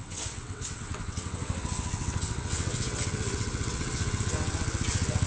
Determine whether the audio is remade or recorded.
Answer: remade